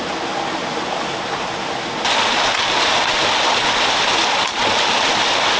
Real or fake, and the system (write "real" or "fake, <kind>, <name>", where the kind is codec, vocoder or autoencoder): real